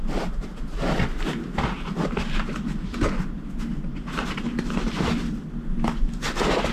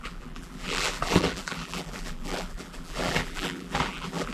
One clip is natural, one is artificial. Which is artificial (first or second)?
second